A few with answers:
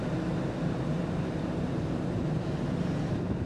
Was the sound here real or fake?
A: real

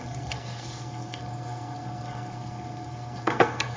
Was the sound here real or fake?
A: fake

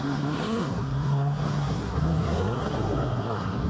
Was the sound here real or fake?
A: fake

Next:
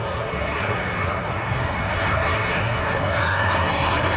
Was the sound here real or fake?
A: fake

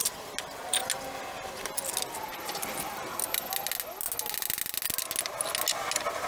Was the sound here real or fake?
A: real